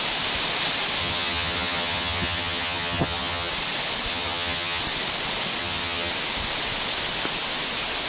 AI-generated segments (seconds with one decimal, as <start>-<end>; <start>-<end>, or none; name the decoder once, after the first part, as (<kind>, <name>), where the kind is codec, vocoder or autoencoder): 1.0-3.5 (vocoder, HiFi-GAN); 4.1-4.8; 5.6-6.1